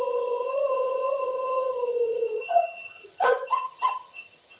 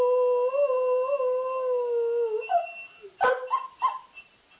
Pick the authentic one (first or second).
second